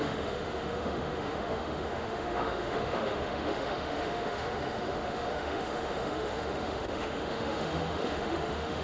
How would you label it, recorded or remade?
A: remade